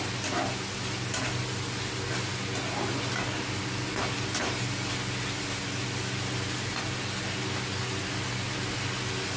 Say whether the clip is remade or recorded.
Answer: recorded